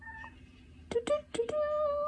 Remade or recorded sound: recorded